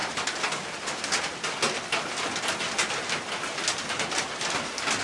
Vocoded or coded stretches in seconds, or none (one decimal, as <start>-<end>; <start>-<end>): none